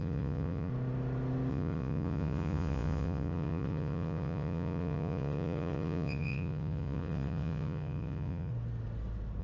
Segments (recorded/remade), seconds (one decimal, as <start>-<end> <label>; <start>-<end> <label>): 0.0-0.7 remade; 0.7-1.5 recorded; 1.5-8.5 remade; 8.5-9.4 recorded